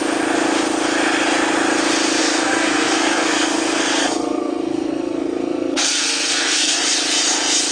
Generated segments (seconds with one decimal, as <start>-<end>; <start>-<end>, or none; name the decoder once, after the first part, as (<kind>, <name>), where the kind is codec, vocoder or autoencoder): 2.2-6.8 (codec, SNAC)